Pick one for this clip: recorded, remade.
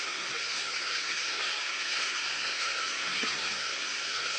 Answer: remade